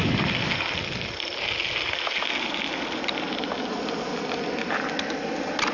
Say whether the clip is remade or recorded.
recorded